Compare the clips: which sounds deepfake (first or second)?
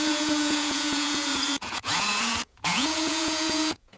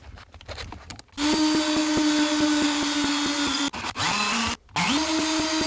first